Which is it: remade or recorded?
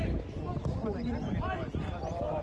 recorded